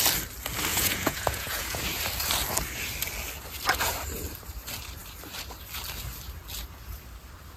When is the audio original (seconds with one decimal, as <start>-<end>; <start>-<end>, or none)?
0.0-0.7; 1.8-7.6